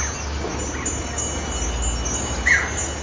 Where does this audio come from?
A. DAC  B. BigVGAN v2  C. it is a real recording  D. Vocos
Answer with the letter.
C